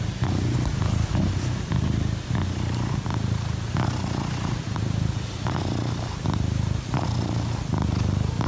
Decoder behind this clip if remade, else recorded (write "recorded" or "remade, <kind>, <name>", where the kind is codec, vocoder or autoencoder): recorded